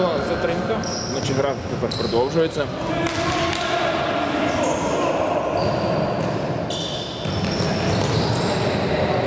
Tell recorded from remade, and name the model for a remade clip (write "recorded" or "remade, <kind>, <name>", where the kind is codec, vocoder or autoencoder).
recorded